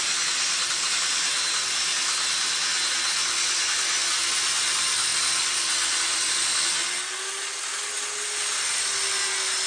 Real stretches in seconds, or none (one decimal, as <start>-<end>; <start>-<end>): 0.0-9.7